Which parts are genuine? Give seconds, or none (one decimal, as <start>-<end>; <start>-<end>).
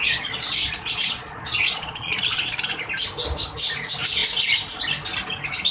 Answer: 2.6-5.7